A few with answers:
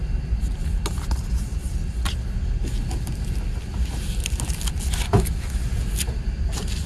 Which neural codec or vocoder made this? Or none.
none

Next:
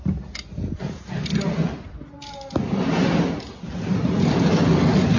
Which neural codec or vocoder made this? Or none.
none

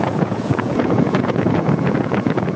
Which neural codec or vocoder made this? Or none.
vocoder, Vocos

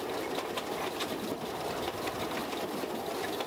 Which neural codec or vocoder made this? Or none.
none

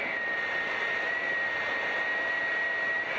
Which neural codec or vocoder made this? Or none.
none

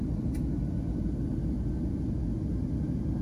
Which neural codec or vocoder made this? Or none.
none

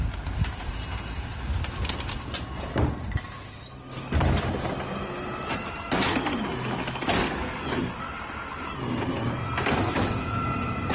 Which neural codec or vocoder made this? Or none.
none